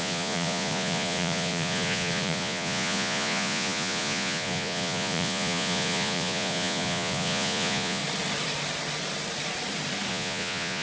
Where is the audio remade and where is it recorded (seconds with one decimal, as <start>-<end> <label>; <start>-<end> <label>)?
0.0-8.0 remade; 8.0-10.1 recorded; 10.1-10.8 remade